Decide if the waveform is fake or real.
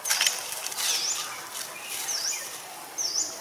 real